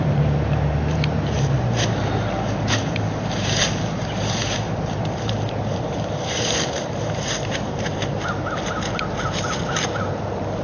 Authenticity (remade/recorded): remade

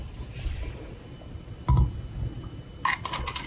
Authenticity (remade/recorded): recorded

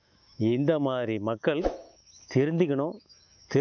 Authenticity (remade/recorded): remade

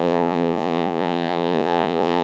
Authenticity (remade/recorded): remade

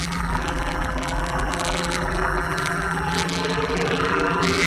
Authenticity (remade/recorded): remade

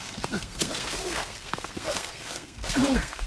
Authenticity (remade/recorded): remade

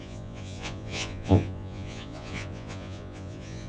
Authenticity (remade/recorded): remade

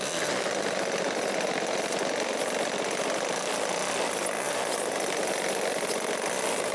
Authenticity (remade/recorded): recorded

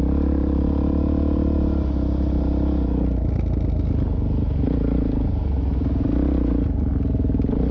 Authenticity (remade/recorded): recorded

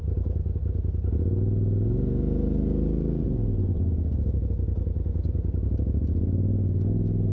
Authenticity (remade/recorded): recorded